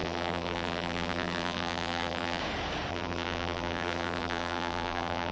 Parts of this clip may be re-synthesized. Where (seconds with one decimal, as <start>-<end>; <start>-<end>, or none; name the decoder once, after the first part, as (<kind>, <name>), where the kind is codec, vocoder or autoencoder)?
0.0-2.4 (vocoder, BigVGAN v2); 2.9-5.3